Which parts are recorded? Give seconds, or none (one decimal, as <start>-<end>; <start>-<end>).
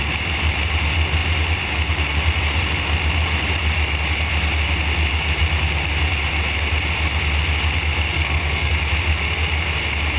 0.0-8.1; 8.7-10.2